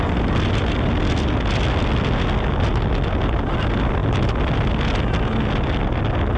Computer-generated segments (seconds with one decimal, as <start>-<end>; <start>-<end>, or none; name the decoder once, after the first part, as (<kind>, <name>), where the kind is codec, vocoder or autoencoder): none